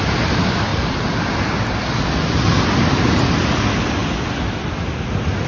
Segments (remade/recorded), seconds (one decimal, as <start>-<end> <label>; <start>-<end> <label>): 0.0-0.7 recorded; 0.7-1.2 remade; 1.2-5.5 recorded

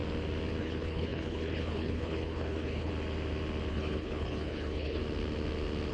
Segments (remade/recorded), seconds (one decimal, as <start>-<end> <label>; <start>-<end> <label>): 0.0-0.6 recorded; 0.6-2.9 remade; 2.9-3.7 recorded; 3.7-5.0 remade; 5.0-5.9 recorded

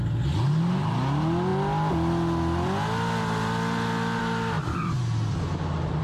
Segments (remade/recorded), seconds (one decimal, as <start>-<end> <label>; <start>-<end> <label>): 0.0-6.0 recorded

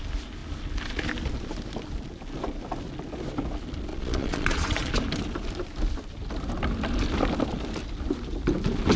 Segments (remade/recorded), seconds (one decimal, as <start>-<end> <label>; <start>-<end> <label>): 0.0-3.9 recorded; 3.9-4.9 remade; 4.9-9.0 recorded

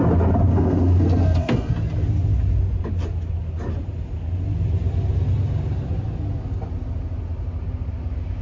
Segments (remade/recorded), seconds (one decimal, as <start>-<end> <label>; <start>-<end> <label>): 0.0-0.5 recorded; 0.5-1.7 remade; 1.7-8.4 recorded